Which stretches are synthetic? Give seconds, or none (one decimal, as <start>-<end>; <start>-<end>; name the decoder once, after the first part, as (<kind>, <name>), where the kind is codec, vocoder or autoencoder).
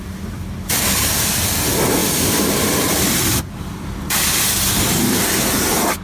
2.0-5.1 (vocoder, BigVGAN v2)